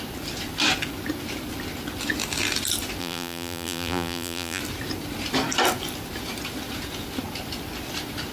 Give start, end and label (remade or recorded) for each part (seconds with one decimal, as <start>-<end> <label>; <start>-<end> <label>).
0.0-3.0 recorded; 3.0-4.6 remade; 4.6-8.3 recorded